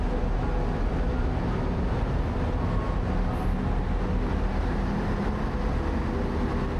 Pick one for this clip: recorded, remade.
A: recorded